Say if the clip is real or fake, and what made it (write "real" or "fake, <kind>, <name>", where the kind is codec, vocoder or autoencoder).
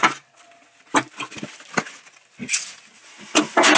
real